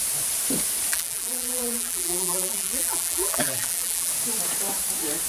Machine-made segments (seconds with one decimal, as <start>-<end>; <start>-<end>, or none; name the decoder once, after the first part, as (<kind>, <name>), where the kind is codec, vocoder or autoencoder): 0.9-4.1 (vocoder, BigVGAN v2)